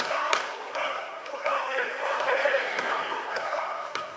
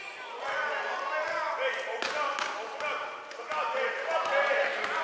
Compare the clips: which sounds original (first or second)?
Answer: second